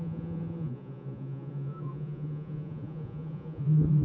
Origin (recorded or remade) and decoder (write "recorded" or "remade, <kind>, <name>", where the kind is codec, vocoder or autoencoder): remade, vocoder, Vocos